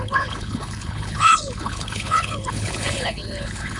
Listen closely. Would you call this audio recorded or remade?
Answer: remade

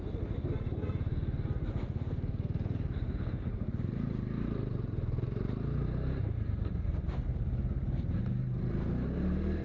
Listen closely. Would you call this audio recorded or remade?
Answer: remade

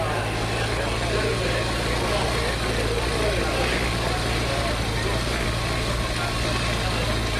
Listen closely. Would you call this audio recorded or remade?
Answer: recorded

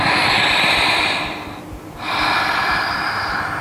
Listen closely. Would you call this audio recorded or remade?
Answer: recorded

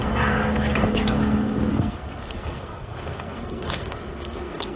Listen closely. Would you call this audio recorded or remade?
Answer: remade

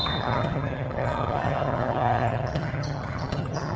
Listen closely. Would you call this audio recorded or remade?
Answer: remade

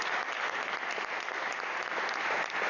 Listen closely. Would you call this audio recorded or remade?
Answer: recorded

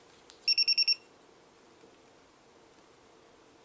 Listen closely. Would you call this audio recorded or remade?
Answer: recorded